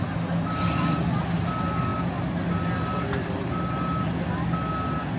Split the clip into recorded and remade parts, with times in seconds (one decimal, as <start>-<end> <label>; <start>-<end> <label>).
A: 0.0-5.2 recorded

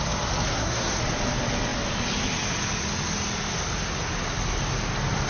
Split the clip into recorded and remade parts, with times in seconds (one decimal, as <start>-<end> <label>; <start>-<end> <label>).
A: 0.0-0.5 recorded; 0.5-1.0 remade; 1.0-5.3 recorded

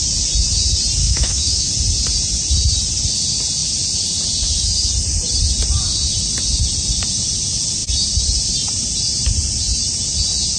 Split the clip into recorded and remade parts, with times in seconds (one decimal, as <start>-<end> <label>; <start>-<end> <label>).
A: 0.0-1.0 recorded; 1.0-1.7 remade; 1.7-10.6 recorded

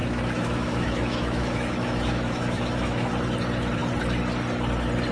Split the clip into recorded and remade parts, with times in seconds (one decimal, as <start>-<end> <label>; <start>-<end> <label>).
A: 0.0-3.1 remade; 3.1-5.1 recorded